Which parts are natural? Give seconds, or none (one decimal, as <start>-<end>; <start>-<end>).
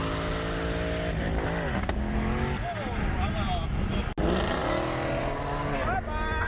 0.0-6.5